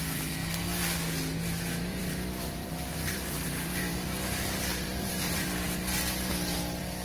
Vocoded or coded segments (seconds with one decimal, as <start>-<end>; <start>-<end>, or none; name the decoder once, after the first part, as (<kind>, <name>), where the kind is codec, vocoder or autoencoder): 1.9-5.5 (vocoder, BigVGAN v2)